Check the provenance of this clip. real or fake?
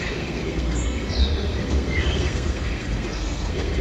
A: fake